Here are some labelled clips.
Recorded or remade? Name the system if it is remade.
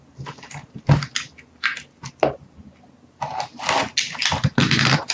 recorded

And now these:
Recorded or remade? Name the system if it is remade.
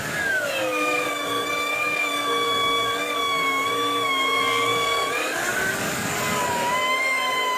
remade, codec, DAC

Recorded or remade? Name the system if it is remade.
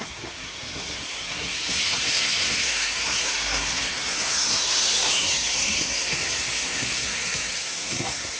remade, codec, SNAC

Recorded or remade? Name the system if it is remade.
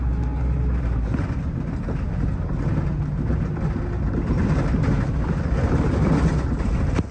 recorded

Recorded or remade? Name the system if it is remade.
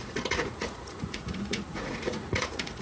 remade, vocoder, Vocos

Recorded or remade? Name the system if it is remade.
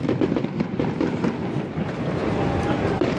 recorded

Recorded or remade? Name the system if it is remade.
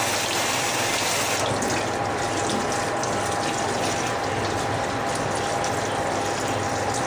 recorded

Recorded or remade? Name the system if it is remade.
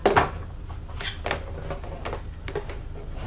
recorded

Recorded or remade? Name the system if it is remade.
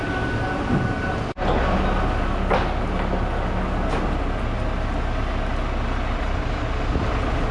recorded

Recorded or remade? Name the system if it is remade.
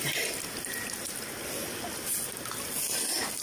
recorded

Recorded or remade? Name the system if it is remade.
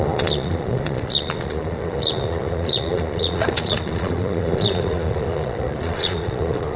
remade, vocoder, Vocos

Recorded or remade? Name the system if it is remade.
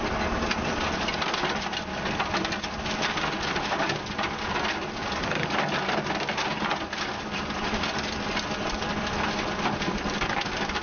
recorded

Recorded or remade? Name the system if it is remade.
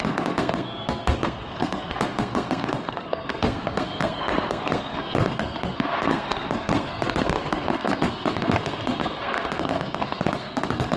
remade, codec, SNAC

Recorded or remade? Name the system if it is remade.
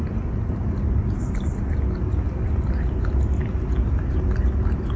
recorded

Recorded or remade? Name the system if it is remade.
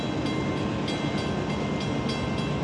recorded